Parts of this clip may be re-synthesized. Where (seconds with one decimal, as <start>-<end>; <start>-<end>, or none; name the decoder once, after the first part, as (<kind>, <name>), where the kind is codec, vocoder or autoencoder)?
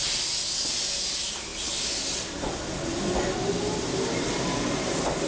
none